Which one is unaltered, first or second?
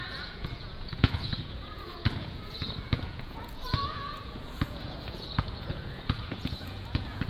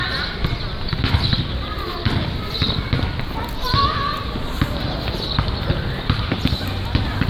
second